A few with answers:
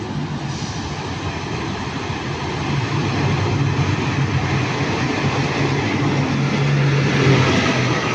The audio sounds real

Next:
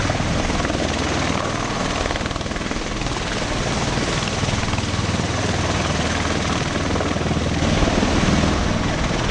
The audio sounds real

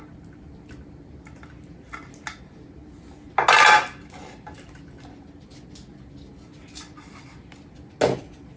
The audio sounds real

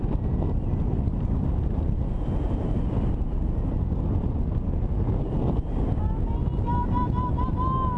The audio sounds real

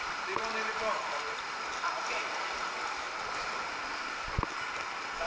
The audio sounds real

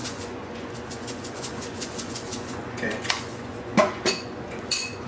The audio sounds fake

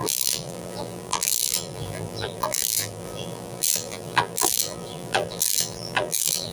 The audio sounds fake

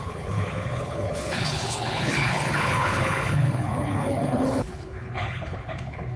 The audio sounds fake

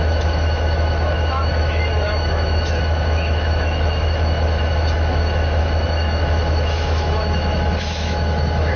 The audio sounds fake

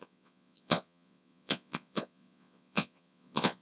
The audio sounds fake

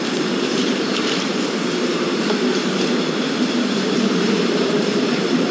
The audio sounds fake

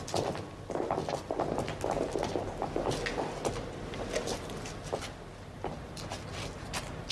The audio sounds real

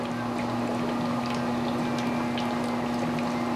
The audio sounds real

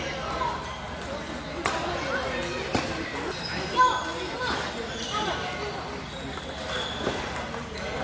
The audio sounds real